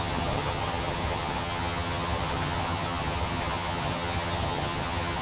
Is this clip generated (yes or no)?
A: yes